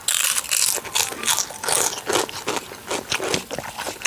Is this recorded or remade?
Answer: recorded